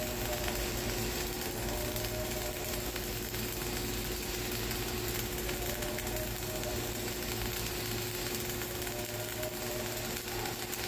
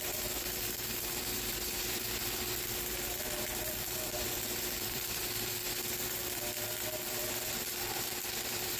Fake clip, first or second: second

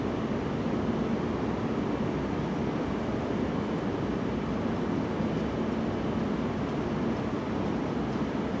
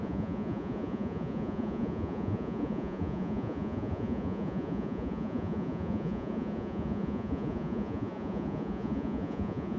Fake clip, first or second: second